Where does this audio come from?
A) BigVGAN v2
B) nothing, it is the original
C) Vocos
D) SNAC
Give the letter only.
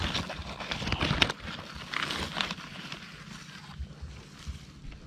B